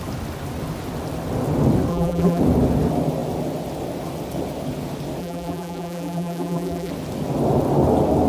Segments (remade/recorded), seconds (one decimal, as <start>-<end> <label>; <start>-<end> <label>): 0.0-1.9 recorded; 1.9-2.4 remade; 2.4-5.2 recorded; 5.2-6.9 remade; 6.9-8.3 recorded